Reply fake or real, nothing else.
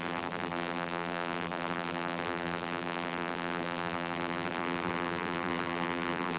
fake